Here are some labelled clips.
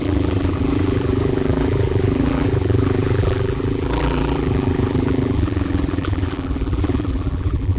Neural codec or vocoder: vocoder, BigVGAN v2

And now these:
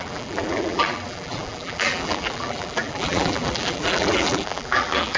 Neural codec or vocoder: vocoder, BigVGAN v2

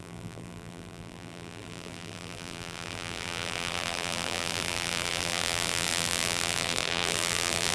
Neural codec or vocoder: vocoder, BigVGAN v2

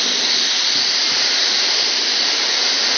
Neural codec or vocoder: vocoder, BigVGAN v2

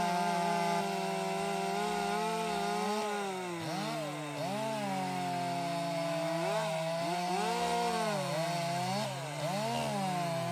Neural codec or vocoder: none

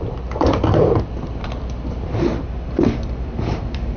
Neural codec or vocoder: vocoder, BigVGAN v2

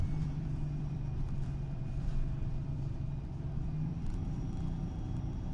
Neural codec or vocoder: vocoder, BigVGAN v2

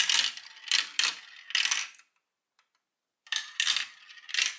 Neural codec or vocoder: none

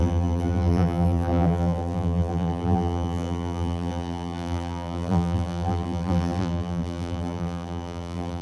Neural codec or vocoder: vocoder, BigVGAN v2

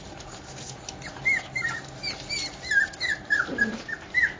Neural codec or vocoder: none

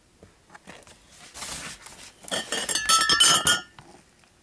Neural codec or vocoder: none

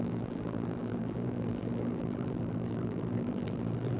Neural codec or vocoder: vocoder, BigVGAN v2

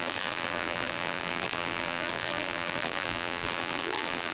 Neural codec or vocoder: vocoder, BigVGAN v2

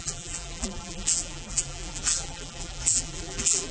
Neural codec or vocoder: vocoder, BigVGAN v2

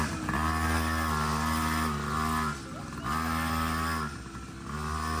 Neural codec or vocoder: none